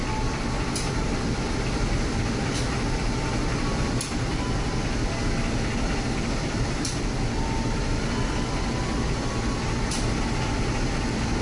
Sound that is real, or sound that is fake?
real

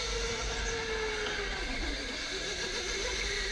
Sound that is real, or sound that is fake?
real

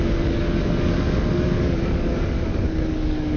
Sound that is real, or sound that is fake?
fake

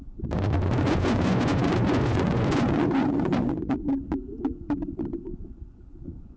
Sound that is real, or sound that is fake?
fake